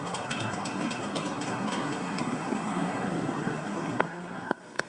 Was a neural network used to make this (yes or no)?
yes